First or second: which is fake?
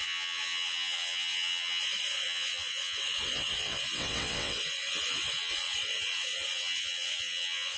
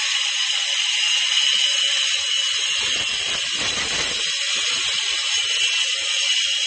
first